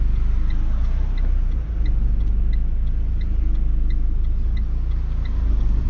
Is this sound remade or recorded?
recorded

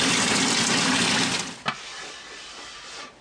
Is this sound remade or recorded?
recorded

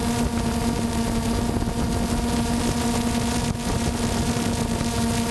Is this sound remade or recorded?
recorded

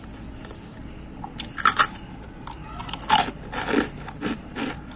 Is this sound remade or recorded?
recorded